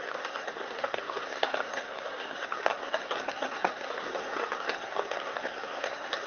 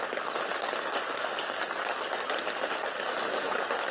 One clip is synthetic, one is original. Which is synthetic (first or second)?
first